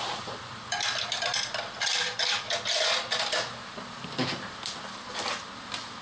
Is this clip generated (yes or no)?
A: yes